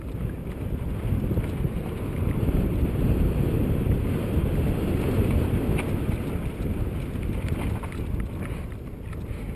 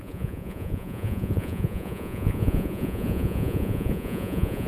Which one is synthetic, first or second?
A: second